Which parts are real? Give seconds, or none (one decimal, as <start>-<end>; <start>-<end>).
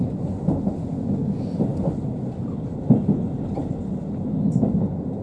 0.0-5.2